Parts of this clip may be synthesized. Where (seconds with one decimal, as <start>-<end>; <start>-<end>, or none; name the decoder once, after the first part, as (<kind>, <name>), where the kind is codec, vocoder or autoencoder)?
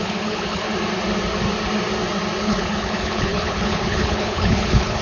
0.0-0.7 (codec, HILCodec); 2.4-5.0